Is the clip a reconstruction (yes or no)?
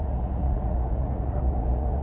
yes